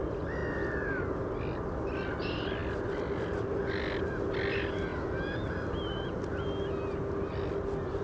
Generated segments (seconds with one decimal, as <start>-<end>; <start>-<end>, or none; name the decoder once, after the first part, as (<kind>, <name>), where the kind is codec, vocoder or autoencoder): none